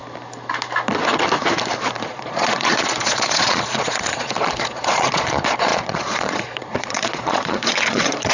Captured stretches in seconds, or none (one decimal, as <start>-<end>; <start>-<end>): 0.0-2.0